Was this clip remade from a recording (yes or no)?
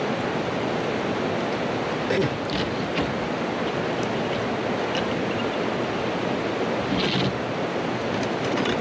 no